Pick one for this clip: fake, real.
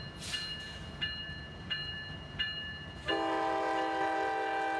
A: real